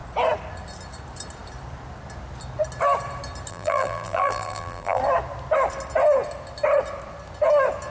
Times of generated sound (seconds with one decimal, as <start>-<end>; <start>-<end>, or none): 3.5-5.0